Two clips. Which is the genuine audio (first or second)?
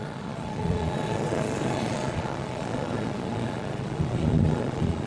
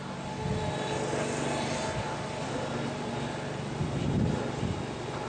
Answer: second